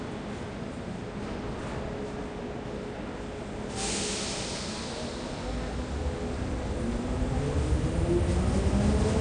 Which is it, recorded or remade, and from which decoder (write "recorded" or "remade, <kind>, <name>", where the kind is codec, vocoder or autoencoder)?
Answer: recorded